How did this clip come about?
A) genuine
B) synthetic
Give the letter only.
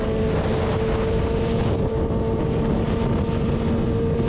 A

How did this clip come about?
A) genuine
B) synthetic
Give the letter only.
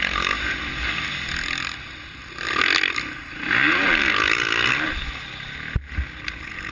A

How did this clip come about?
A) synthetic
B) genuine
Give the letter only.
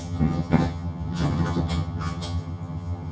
A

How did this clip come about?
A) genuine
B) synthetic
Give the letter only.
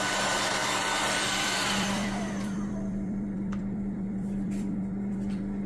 B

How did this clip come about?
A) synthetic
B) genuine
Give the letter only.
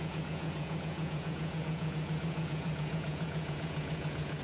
A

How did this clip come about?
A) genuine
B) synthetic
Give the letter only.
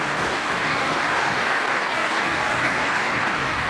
B